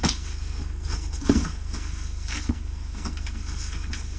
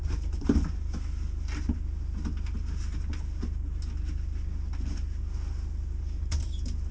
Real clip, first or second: second